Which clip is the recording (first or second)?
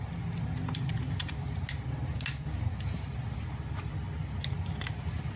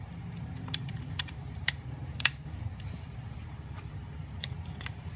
first